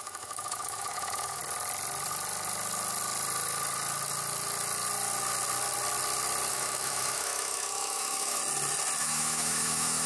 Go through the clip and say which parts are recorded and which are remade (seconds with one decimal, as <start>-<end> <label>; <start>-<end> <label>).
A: 0.0-1.4 remade; 1.4-6.5 recorded; 6.5-8.4 remade; 8.4-9.0 recorded; 9.0-10.1 remade